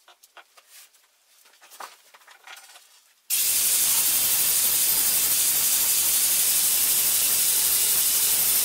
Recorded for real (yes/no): no